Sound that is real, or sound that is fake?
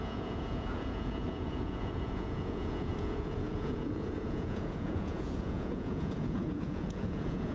fake